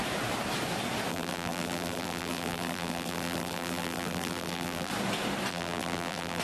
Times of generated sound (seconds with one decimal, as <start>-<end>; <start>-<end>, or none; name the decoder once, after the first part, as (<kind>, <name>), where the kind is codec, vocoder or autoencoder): 1.1-4.9 (vocoder, BigVGAN v2); 5.5-6.4